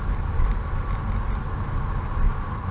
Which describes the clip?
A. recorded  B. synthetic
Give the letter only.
A